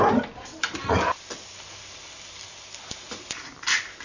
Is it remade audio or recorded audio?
recorded